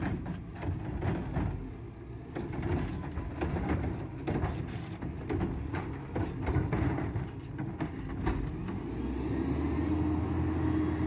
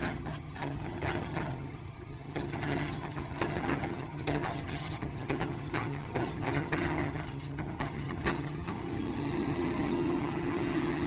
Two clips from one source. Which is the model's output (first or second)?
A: second